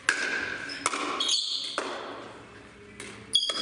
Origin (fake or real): real